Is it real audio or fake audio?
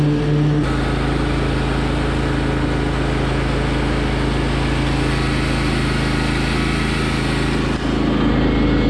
real